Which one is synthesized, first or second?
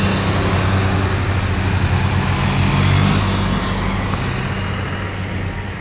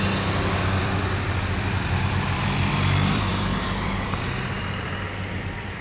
second